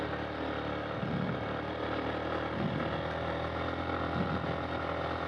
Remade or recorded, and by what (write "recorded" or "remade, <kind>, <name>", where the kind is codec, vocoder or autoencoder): recorded